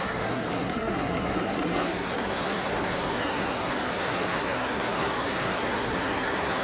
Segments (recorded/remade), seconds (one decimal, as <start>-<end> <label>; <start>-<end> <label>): 0.0-6.6 remade

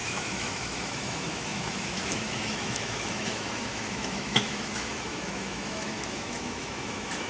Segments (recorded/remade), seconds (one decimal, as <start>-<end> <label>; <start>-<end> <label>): 0.0-7.3 remade

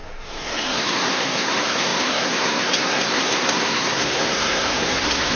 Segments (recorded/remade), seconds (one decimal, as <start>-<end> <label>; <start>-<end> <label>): 0.0-5.4 remade

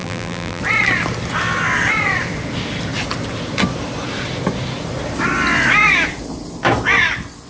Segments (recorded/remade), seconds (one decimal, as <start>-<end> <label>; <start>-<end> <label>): 0.0-0.6 remade; 0.6-7.5 recorded